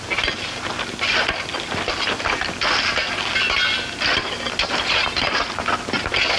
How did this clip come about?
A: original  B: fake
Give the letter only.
A